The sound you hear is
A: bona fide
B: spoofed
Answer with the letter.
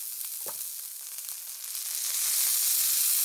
A